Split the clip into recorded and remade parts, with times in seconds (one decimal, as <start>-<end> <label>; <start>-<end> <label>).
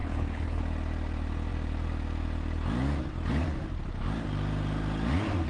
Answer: 0.0-0.6 remade; 0.6-5.5 recorded